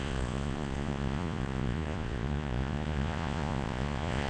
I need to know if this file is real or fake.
fake